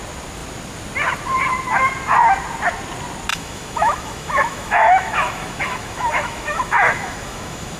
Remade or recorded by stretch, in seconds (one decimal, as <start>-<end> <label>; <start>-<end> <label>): 0.0-3.3 recorded; 3.3-7.8 remade